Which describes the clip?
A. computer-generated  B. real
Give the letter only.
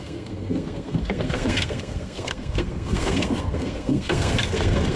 A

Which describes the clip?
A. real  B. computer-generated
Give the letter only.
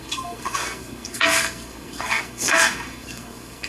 B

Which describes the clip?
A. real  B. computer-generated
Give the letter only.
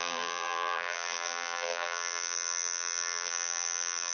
B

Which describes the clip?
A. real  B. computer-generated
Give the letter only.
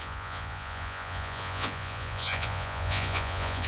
B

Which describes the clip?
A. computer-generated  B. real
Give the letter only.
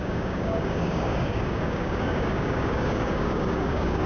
A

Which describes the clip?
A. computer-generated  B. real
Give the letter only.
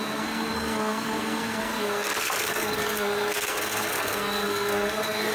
A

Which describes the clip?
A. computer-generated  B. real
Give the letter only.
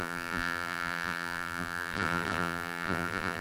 A